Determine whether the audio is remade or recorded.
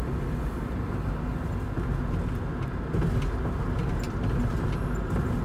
recorded